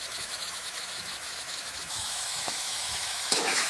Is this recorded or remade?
remade